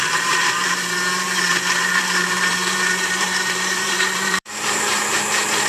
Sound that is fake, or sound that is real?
fake